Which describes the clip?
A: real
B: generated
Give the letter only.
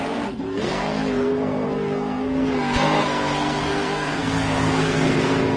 B